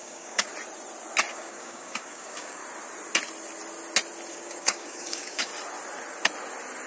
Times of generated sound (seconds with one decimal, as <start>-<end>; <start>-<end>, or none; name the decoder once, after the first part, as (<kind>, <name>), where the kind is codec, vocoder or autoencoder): 0.0-0.5 (codec, DAC); 1.3-2.6; 4.3-5.5